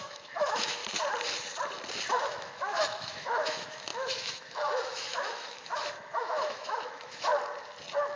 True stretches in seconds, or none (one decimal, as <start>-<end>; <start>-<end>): 0.8-2.1; 7.3-8.2